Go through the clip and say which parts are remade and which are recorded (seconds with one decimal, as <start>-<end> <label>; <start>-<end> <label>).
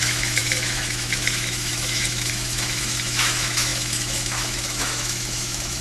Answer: 0.0-5.8 remade